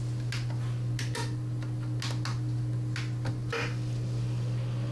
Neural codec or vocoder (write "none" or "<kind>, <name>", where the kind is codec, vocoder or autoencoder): none